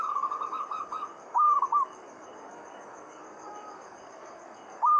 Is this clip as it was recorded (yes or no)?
no